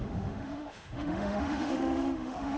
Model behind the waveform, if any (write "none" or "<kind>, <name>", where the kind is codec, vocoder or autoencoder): autoencoder, DAC-VAE